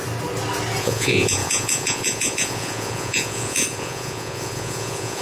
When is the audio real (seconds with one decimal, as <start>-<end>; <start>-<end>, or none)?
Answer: 0.0-0.8